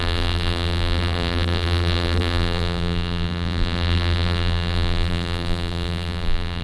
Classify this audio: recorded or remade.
remade